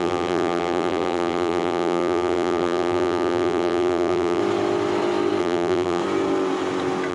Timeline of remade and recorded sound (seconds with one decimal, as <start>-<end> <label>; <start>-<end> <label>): 0.0-4.4 remade; 4.4-5.4 recorded; 5.4-6.0 remade; 6.0-7.1 recorded